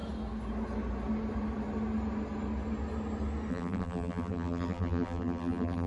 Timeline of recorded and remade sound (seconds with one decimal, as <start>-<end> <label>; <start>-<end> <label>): 0.0-3.5 recorded; 3.5-5.9 remade